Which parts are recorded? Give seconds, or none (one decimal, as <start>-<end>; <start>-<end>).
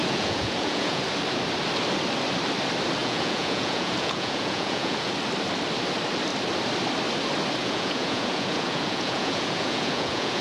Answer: 1.0-3.0; 5.1-7.6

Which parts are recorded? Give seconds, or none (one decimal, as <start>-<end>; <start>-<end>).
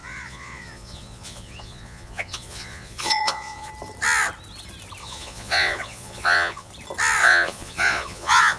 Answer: 3.7-5.0; 6.7-7.2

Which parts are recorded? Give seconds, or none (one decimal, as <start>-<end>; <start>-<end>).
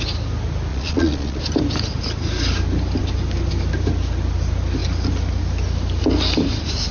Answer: 0.0-0.7; 1.4-6.9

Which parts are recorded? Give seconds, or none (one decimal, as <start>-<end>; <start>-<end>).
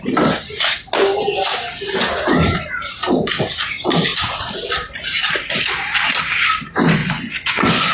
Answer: 0.0-7.0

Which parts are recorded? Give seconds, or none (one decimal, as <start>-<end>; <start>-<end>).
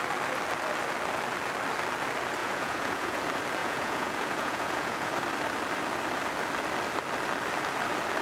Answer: 0.0-2.4; 3.2-3.6; 5.1-8.2